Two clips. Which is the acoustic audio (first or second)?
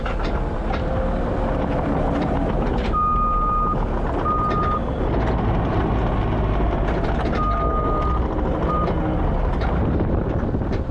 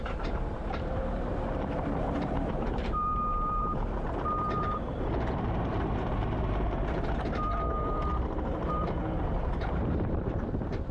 first